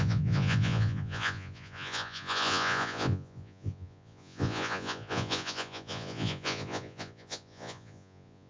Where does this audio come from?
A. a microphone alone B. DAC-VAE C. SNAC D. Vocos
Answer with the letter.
D